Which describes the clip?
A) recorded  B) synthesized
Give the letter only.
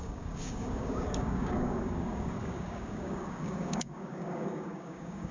B